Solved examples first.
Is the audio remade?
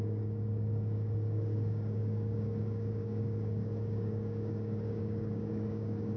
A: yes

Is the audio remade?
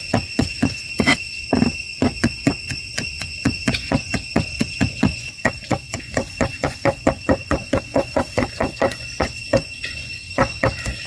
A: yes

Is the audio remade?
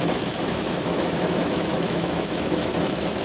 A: yes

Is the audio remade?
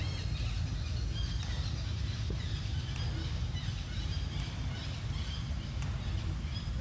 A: no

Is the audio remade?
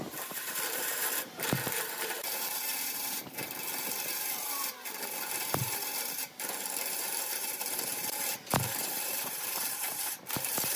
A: yes